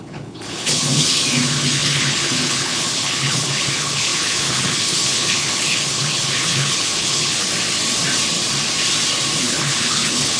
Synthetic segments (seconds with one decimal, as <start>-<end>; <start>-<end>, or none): 0.0-7.5; 9.4-10.4

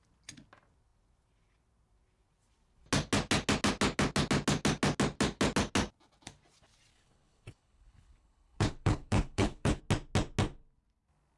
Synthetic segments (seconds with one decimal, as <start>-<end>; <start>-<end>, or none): 6.9-9.8